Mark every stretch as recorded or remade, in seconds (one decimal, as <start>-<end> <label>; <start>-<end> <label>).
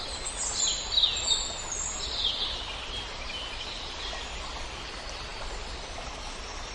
0.0-6.7 recorded